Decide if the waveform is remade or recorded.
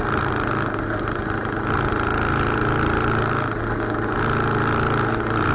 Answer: recorded